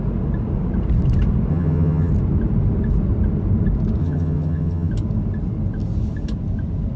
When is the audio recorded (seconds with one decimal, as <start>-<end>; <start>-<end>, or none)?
0.0-1.5; 2.1-4.0; 4.9-7.0